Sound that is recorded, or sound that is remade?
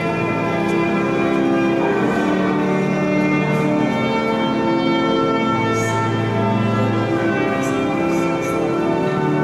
recorded